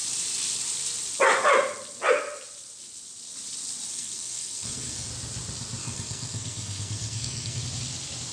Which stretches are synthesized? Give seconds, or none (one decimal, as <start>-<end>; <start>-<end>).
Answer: 3.9-5.1; 5.8-7.6